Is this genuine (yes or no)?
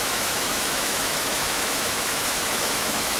no